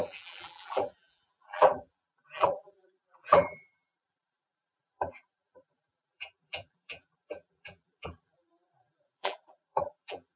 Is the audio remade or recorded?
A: remade